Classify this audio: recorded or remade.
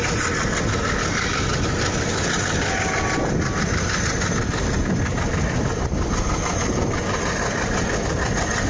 recorded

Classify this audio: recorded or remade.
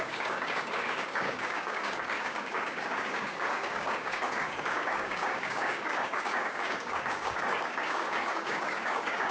remade